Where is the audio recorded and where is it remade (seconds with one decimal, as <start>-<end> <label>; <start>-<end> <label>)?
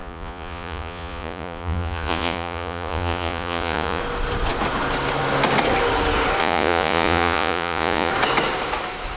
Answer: 0.0-4.0 remade; 4.0-6.4 recorded; 6.4-8.1 remade; 8.1-9.2 recorded